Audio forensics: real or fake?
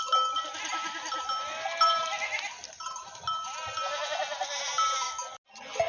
real